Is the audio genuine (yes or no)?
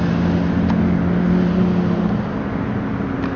yes